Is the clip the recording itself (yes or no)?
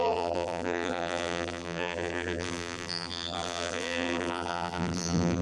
no